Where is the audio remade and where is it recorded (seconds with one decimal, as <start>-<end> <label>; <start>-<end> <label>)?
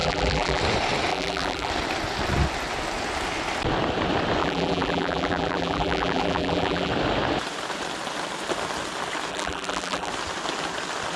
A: 0.0-0.6 remade; 0.6-1.1 recorded; 1.1-1.7 remade; 1.7-4.4 recorded; 4.4-6.9 remade; 6.9-9.3 recorded; 9.3-10.1 remade; 10.1-11.2 recorded